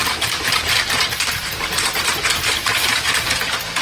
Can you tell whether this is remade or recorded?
remade